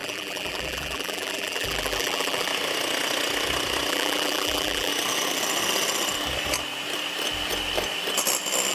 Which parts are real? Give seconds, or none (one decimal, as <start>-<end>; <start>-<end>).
2.5-3.9; 4.9-8.7

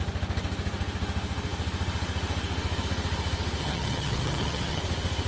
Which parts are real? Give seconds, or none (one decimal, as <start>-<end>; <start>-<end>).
0.0-3.6; 4.8-5.3

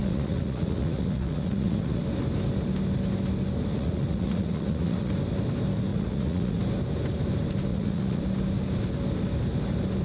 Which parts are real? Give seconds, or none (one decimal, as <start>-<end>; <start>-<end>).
2.0-3.7; 5.1-5.9; 6.6-7.7; 8.2-10.0